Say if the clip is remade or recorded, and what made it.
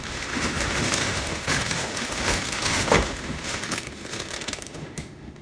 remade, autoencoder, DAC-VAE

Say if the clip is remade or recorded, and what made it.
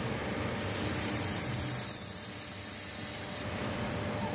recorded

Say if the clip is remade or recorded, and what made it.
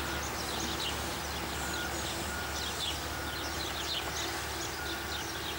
recorded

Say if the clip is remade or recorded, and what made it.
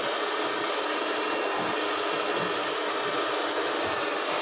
recorded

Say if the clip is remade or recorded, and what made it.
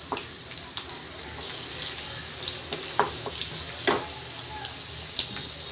recorded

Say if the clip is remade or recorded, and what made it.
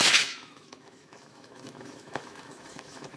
remade, autoencoder, DAC-VAE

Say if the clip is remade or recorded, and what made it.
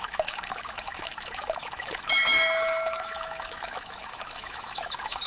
remade, autoencoder, DAC-VAE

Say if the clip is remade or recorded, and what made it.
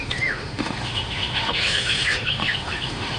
remade, autoencoder, DAC-VAE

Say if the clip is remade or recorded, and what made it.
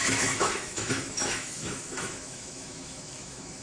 remade, autoencoder, DAC-VAE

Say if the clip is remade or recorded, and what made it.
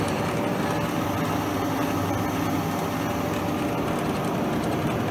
recorded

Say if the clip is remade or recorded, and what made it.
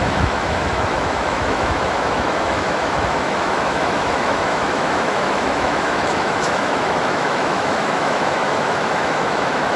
remade, autoencoder, DAC-VAE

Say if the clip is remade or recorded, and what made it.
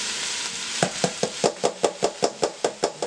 recorded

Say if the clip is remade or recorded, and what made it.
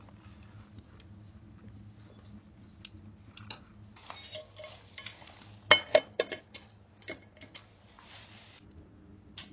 recorded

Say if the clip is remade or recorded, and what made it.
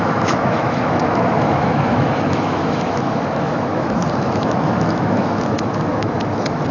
remade, autoencoder, DAC-VAE